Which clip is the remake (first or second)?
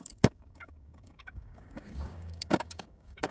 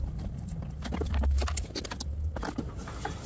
first